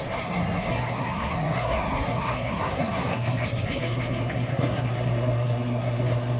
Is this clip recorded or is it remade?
remade